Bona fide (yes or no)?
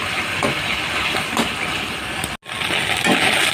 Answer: yes